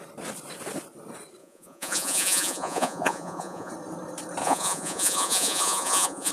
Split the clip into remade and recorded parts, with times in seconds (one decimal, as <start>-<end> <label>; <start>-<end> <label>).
0.0-1.4 recorded; 1.4-3.7 remade; 3.7-4.4 recorded; 4.4-6.3 remade